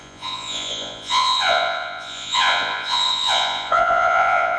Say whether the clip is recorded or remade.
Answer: remade